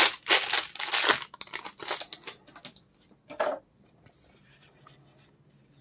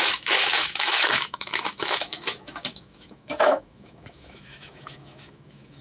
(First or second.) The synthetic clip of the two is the second